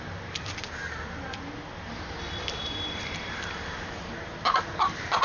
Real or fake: real